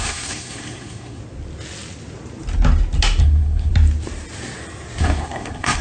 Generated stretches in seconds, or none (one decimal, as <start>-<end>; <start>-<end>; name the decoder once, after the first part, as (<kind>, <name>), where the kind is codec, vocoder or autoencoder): 0.0-1.2 (codec, SNAC); 3.2-3.7; 5.0-5.8